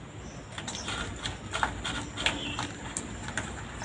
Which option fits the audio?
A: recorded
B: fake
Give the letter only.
A